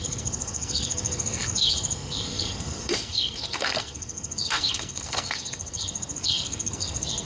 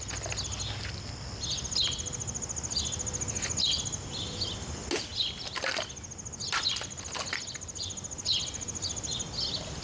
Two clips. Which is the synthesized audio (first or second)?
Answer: first